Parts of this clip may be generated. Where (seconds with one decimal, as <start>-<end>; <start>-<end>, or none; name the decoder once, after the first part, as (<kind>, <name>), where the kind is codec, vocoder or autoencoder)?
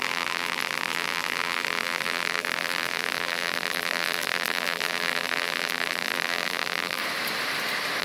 0.0-7.0 (vocoder, BigVGAN v2)